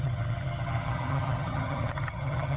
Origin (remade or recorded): remade